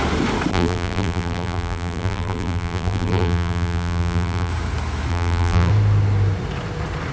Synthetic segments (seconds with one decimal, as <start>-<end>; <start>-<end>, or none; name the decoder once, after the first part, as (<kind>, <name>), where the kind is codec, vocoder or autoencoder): 0.5-4.5 (vocoder, BigVGAN v2); 5.1-5.7

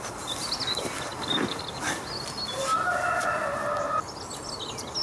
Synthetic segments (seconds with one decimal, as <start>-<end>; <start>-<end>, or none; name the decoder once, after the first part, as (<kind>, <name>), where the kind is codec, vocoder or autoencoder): none

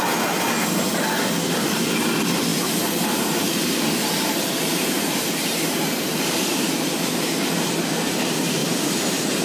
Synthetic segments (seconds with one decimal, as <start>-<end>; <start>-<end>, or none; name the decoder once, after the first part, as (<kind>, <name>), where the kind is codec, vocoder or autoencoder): 2.5-7.7 (vocoder, BigVGAN v2); 8.6-9.4

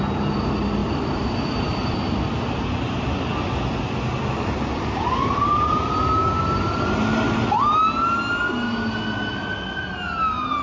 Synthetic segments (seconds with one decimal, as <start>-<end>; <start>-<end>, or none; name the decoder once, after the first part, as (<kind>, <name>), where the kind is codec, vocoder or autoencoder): 0.8-2.2 (vocoder, BigVGAN v2)

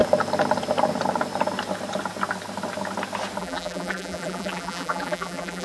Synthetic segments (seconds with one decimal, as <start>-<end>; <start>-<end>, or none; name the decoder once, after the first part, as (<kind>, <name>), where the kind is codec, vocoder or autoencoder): 3.4-5.6 (vocoder, BigVGAN v2)

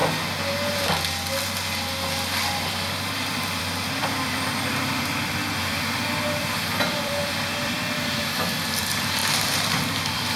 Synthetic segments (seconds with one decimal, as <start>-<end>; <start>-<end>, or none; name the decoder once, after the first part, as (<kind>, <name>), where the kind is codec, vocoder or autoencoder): 2.7-9.2 (vocoder, BigVGAN v2); 10.0-10.4